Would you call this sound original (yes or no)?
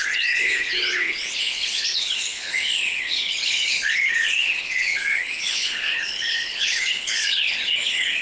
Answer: no